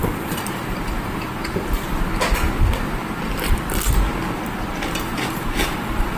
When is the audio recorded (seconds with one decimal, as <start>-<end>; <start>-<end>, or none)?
2.1-4.7